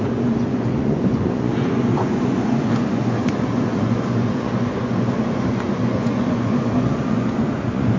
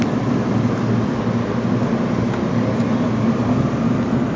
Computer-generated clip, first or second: first